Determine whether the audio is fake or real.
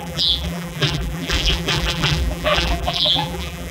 fake